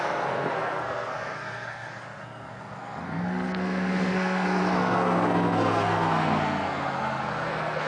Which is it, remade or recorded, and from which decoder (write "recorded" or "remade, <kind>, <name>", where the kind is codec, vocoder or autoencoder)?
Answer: remade, codec, SNAC